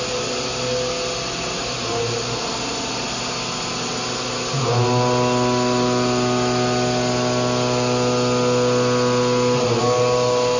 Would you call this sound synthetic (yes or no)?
no